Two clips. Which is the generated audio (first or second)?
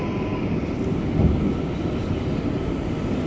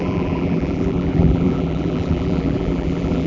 second